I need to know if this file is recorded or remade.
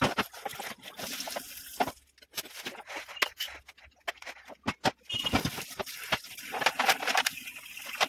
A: recorded